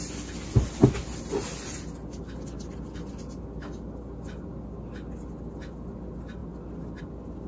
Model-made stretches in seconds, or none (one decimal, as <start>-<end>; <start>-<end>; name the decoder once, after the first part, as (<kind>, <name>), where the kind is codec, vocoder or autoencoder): none